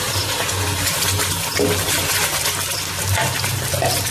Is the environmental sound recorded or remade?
recorded